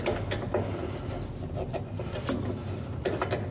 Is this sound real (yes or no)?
yes